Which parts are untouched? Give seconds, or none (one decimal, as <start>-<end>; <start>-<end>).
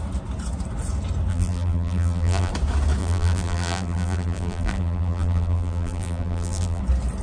0.0-1.3; 2.5-3.0; 6.8-7.2